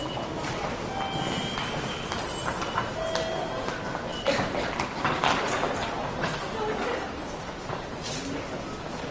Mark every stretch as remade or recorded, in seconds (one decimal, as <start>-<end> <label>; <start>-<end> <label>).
0.0-9.1 recorded